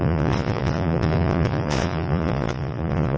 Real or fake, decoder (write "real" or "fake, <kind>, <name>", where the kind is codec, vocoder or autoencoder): fake, vocoder, Vocos